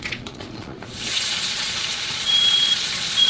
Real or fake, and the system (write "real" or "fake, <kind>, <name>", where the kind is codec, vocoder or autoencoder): fake, vocoder, Vocos